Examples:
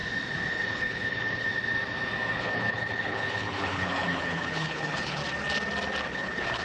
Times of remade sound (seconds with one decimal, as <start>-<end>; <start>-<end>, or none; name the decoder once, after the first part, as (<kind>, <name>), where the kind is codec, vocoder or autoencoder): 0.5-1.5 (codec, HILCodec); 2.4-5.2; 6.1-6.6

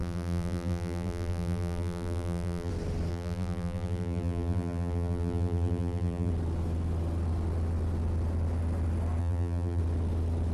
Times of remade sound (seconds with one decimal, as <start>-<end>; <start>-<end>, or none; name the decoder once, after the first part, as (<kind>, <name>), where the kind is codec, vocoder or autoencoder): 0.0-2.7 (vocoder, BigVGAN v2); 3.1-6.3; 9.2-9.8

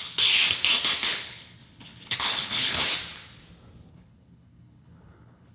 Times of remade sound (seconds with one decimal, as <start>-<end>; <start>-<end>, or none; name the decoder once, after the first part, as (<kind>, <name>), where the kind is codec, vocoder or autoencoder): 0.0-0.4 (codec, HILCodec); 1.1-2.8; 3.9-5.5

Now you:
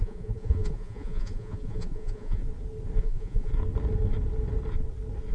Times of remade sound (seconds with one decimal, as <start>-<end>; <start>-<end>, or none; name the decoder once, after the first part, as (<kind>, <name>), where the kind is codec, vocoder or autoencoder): 0.0-2.4 (vocoder, Vocos); 3.0-3.5

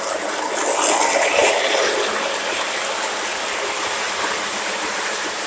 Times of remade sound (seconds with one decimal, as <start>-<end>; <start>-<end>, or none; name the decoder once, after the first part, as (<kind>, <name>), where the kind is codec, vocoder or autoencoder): 1.4-2.0 (vocoder, BigVGAN v2); 3.3-5.5